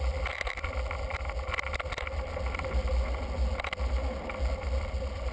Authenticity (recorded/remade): recorded